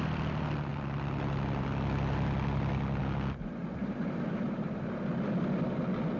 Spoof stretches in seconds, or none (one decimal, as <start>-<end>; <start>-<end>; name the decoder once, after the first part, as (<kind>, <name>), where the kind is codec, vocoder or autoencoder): 3.8-5.0 (vocoder, BigVGAN v2)